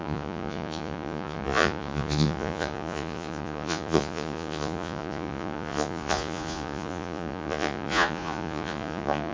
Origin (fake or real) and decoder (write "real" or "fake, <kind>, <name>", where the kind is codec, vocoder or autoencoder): fake, vocoder, Vocos